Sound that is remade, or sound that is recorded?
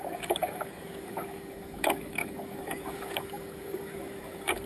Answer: remade